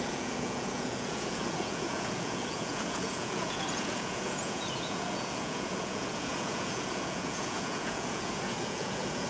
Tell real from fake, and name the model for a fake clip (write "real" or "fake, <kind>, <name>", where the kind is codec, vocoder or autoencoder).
fake, vocoder, Vocos